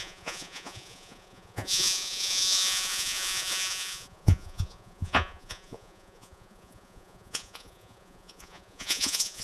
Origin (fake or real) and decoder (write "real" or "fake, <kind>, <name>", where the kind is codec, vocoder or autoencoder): fake, vocoder, Vocos